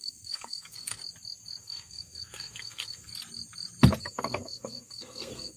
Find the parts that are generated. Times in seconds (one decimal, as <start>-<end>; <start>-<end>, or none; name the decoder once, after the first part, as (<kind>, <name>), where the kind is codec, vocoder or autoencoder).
0.0-1.0 (codec, SNAC); 1.6-3.1; 4.0-5.6